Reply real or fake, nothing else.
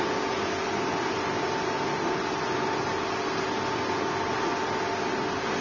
real